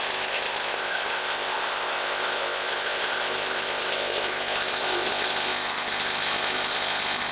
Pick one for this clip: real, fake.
fake